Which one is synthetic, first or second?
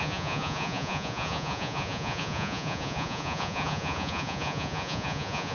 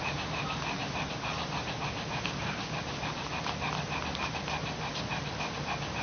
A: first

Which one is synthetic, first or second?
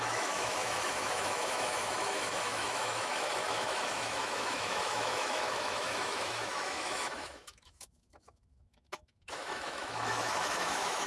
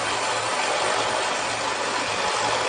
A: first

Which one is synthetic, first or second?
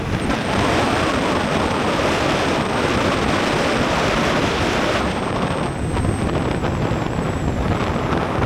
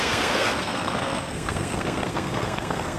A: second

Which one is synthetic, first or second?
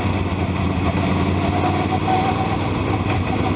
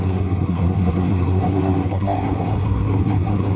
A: second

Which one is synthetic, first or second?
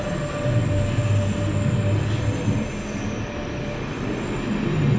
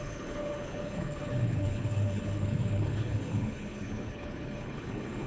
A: second